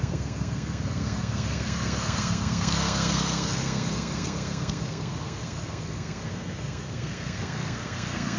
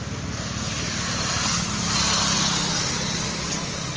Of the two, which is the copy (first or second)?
first